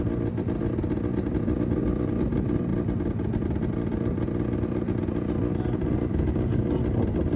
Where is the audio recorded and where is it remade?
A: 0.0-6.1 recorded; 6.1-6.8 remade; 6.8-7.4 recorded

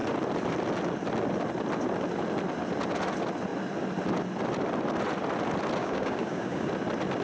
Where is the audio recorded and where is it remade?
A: 0.0-5.8 recorded; 5.8-6.7 remade; 6.7-7.2 recorded

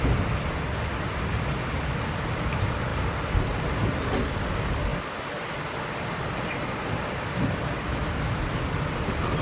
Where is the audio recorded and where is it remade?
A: 0.0-9.4 recorded

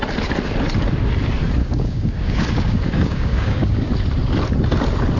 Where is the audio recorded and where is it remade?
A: 0.0-1.6 recorded; 1.6-3.9 remade; 3.9-5.2 recorded

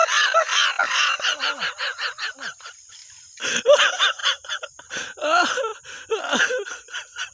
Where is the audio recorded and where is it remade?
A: 0.0-7.3 recorded

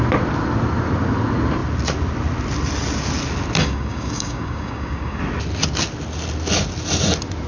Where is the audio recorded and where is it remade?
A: 0.0-3.6 recorded; 3.6-5.2 remade; 5.2-7.5 recorded

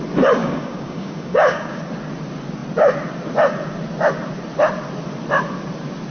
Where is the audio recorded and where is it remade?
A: 0.0-0.4 recorded; 0.4-1.8 remade; 1.8-6.1 recorded